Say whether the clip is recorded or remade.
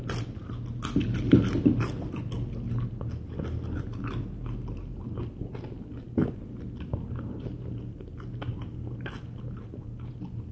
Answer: recorded